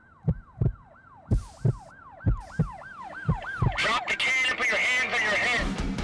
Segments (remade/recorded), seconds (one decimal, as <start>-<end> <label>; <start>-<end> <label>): 0.0-6.0 recorded